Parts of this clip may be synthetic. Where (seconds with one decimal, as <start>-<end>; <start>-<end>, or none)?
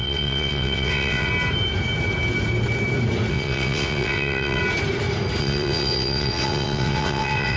0.0-1.3; 3.3-4.6; 5.4-7.6